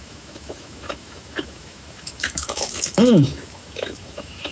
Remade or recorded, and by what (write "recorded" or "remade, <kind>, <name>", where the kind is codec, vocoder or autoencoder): remade, autoencoder, DAC-VAE